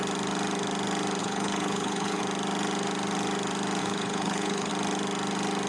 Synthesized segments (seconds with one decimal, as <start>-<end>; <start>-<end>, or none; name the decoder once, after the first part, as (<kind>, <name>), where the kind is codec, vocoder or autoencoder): 1.2-2.2 (codec, HILCodec); 3.8-4.7